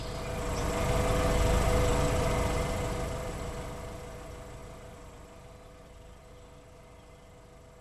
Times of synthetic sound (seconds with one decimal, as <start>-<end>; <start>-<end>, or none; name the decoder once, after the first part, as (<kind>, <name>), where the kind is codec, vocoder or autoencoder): 1.9-3.5 (vocoder, BigVGAN v2); 4.6-6.3